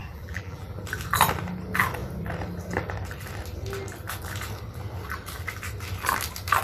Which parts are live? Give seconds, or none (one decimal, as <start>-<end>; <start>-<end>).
0.8-6.6